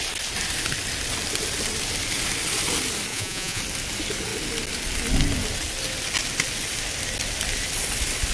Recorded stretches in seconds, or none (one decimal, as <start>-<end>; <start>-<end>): 0.0-3.1; 3.6-8.3